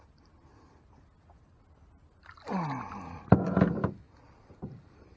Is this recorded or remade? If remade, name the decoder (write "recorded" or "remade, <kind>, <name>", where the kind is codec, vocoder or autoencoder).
recorded